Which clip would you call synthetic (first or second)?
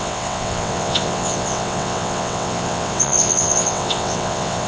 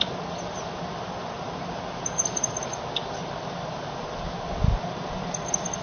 first